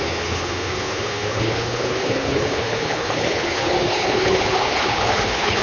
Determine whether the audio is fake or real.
fake